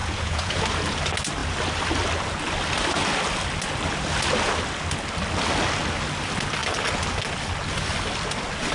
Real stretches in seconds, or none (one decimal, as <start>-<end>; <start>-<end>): 0.6-8.7